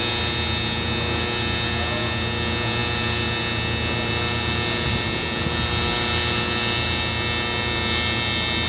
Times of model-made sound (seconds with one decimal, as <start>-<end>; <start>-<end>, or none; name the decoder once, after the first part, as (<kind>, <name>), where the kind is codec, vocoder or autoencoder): none